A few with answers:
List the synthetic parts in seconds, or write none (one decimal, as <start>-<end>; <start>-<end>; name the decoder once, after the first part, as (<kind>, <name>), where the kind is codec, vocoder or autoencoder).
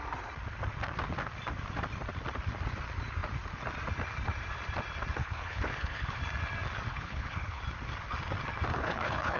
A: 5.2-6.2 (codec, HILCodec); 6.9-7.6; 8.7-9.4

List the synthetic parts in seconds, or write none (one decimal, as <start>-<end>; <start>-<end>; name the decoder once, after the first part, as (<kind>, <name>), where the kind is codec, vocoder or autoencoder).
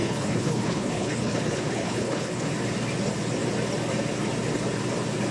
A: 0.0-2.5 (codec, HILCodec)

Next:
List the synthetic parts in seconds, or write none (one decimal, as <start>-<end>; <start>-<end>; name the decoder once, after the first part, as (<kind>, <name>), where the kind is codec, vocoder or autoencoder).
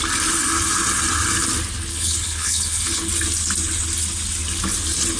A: 1.9-3.1 (codec, HILCodec)